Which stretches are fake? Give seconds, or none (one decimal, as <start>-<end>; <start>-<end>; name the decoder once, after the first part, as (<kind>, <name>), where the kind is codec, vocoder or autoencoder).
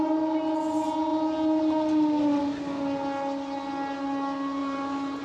4.6-5.2 (vocoder, BigVGAN v2)